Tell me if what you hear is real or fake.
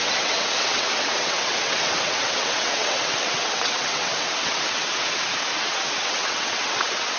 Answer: fake